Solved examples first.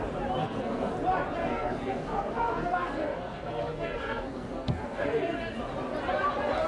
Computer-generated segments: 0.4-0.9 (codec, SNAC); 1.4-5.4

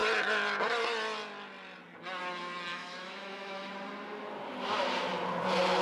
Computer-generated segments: 2.7-3.7 (autoencoder, DAC-VAE)

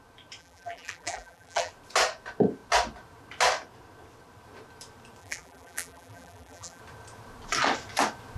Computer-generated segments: 0.4-1.7 (vocoder, BigVGAN v2); 5.2-6.8

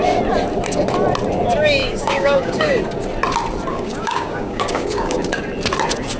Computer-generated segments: 1.8-2.8 (codec, DAC); 3.7-5.3